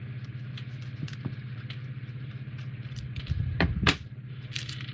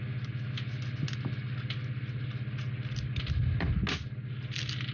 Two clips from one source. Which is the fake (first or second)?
first